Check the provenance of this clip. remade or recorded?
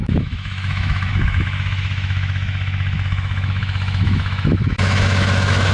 remade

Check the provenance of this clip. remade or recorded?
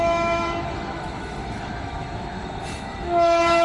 remade